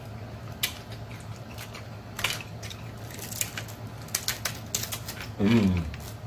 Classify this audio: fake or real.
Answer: real